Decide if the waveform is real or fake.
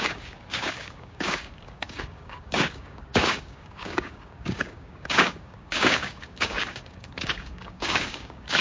fake